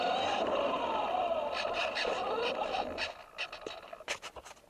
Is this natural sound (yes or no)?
yes